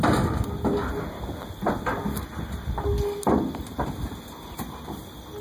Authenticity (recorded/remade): recorded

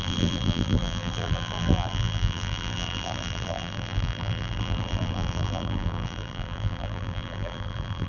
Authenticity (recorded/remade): remade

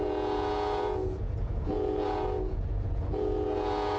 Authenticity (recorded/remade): remade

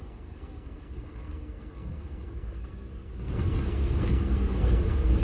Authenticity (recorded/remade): remade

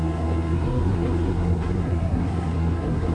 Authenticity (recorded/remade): remade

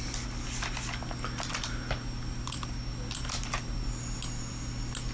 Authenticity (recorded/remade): recorded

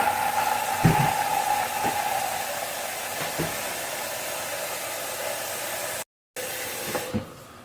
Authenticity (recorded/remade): recorded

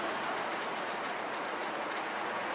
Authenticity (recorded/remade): remade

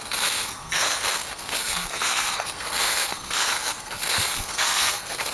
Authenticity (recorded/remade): remade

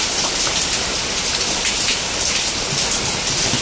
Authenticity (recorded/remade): recorded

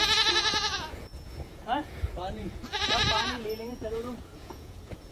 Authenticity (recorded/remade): remade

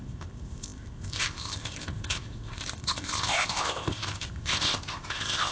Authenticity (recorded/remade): remade